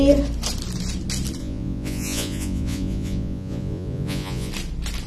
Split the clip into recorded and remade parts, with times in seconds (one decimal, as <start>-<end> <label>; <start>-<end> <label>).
0.0-1.4 recorded; 1.4-4.5 remade; 4.5-5.1 recorded